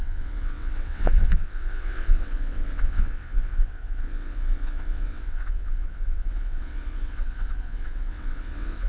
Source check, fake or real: fake